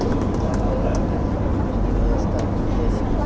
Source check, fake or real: real